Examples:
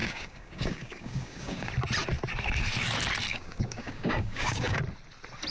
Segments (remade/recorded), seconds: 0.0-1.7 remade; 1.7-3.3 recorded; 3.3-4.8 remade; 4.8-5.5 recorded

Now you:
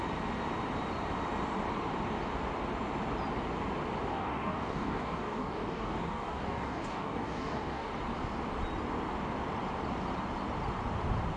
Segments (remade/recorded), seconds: 0.0-4.1 recorded; 4.1-7.9 remade; 7.9-11.4 recorded